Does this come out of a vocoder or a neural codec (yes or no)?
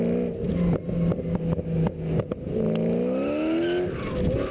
no